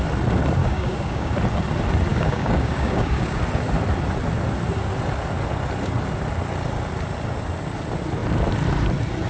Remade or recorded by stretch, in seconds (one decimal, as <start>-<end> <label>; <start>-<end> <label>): 0.0-0.6 recorded; 0.6-1.3 remade; 1.3-2.1 recorded; 2.1-3.4 remade; 3.4-9.3 recorded